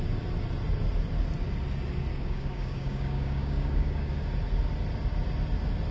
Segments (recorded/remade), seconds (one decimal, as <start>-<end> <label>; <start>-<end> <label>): 0.0-2.1 recorded; 2.1-4.1 remade; 4.1-5.9 recorded